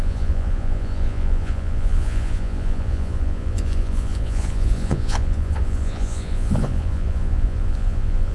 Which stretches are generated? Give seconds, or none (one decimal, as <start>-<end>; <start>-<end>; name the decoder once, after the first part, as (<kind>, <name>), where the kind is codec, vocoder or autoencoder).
0.0-8.3 (vocoder, Vocos)